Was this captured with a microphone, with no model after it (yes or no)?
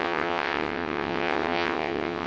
no